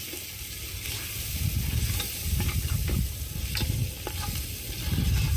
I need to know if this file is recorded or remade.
recorded